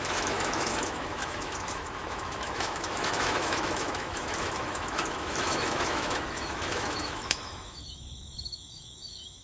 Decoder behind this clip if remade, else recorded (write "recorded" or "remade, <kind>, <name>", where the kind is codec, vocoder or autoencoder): remade, autoencoder, DAC-VAE